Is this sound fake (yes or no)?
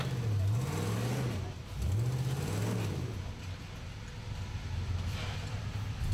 no